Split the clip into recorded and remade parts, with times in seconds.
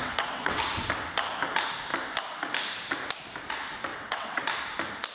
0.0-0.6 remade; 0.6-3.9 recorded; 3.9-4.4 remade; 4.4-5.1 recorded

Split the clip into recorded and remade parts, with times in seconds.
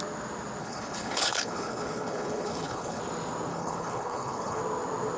0.0-0.6 recorded; 0.6-3.0 remade; 3.0-3.5 recorded; 3.5-4.6 remade; 4.6-5.2 recorded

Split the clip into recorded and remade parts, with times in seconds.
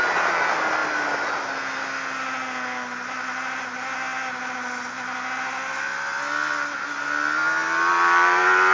0.0-8.7 recorded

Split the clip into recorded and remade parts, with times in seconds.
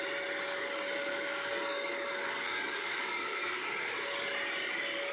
0.0-0.5 recorded; 0.5-3.6 remade; 3.6-5.1 recorded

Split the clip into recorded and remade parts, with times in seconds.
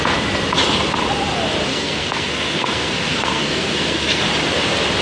0.0-1.7 recorded; 1.7-4.2 remade; 4.2-5.0 recorded